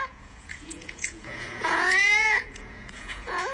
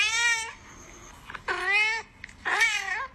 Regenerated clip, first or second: first